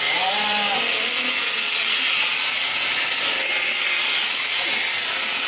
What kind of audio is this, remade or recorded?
recorded